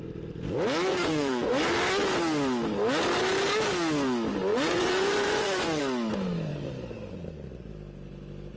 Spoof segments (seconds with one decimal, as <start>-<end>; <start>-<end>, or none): 0.9-1.6; 4.5-5.8